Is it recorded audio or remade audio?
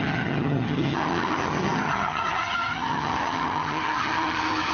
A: remade